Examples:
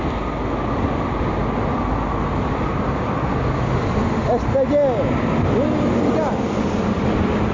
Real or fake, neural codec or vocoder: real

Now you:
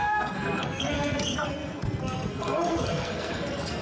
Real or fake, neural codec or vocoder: fake, codec, SNAC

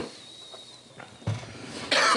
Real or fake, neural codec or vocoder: real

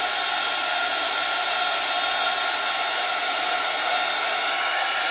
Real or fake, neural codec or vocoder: real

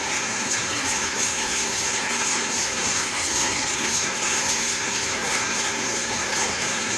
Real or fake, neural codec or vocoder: fake, codec, SNAC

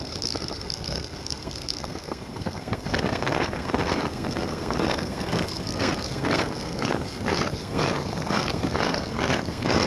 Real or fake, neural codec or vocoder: fake, codec, SNAC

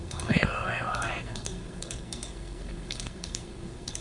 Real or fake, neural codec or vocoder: fake, codec, SNAC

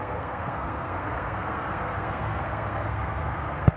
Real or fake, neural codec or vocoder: fake, codec, SNAC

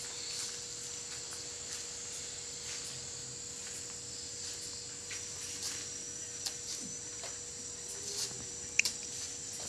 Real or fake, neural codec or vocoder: real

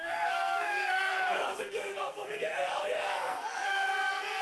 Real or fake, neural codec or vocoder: fake, codec, SNAC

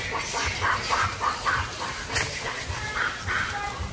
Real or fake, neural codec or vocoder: real